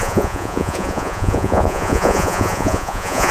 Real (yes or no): no